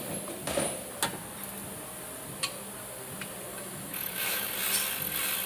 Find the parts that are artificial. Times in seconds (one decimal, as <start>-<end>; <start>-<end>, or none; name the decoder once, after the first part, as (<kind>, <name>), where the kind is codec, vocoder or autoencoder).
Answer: 3.5-4.5 (autoencoder, DAC-VAE)

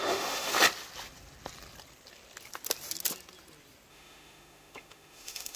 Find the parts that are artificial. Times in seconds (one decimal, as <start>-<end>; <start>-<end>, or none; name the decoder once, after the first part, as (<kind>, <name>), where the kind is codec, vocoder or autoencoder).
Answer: 0.0-0.5 (autoencoder, DAC-VAE); 3.9-5.6